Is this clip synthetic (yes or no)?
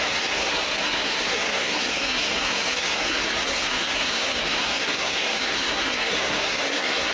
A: yes